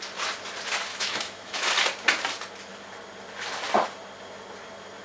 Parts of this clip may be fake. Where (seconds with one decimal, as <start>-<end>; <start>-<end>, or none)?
0.9-1.7